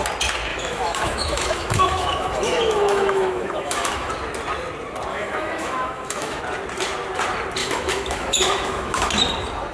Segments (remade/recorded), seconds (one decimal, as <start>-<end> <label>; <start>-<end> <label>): 0.0-0.5 recorded; 0.5-4.1 remade; 4.1-5.1 recorded; 5.1-6.4 remade; 6.4-7.6 recorded; 7.6-9.1 remade; 9.1-9.7 recorded